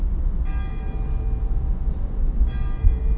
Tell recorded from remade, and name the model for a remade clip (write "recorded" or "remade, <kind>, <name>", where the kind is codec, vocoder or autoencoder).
recorded